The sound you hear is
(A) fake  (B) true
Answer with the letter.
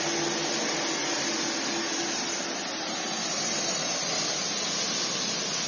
B